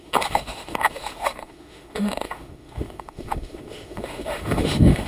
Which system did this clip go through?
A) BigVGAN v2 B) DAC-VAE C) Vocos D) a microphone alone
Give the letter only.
B